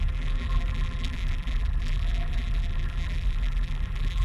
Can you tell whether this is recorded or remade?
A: remade